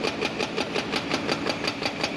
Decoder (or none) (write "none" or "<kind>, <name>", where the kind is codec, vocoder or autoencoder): none